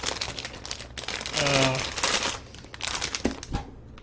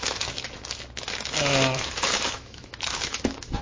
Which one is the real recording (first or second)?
first